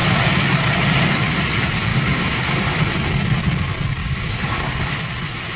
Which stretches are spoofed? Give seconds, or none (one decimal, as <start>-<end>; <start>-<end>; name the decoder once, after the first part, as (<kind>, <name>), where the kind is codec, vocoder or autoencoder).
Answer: 1.9-2.8 (codec, DAC); 4.0-5.0